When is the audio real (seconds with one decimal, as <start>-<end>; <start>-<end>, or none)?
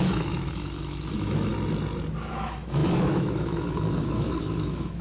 1.5-2.3